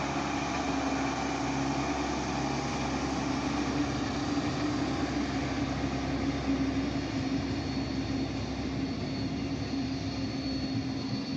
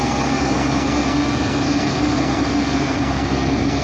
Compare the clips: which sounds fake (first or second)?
second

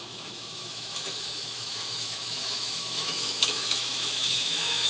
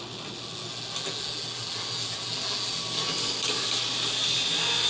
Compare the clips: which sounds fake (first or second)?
first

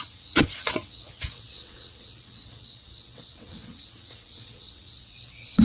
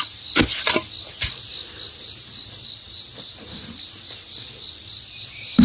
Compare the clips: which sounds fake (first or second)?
first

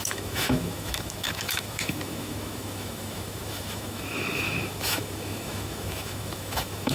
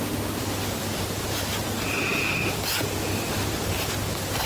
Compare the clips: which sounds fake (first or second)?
first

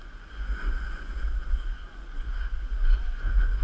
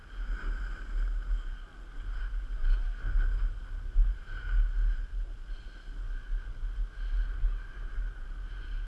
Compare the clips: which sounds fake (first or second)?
first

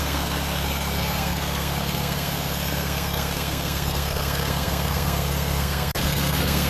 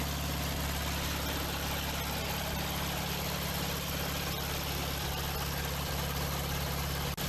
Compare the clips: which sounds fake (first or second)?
first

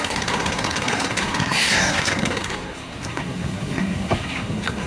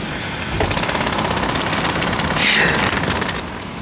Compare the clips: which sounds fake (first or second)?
first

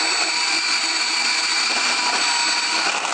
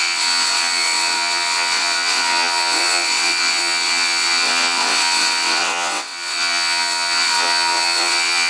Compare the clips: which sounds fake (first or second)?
second